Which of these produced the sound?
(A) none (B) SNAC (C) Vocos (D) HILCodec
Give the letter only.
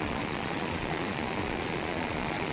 C